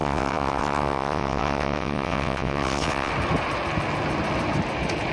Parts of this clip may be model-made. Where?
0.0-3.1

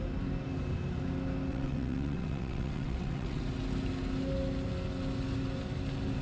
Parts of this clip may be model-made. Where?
1.5-3.4

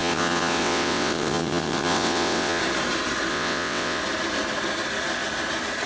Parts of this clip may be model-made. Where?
0.0-2.6; 3.3-4.0

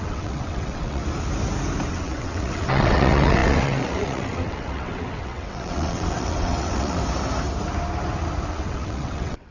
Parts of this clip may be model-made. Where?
0.0-1.0; 1.9-7.0; 8.5-9.5